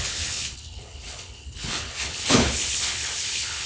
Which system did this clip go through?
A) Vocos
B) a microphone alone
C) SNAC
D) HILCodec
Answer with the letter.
D